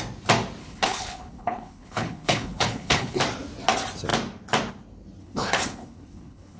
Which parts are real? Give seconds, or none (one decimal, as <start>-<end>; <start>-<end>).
0.0-0.6; 3.2-5.2